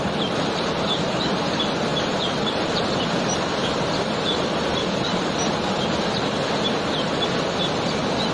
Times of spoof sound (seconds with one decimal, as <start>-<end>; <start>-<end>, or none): none